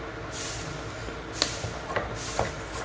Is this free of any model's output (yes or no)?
yes